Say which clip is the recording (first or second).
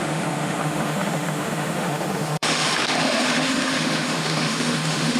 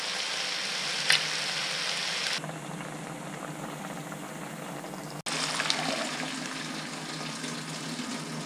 second